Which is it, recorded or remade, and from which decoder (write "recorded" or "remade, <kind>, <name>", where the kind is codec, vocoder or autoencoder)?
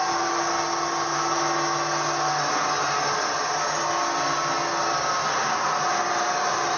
recorded